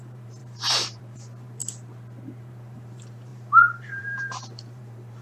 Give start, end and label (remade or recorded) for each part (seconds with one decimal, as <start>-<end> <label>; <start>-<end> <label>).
0.0-1.6 remade; 1.6-2.4 recorded; 2.4-5.2 remade